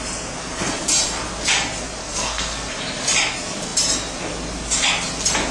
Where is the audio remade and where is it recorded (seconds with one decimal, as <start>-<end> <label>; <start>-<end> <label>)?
0.0-2.0 recorded; 2.0-2.7 remade; 2.7-5.5 recorded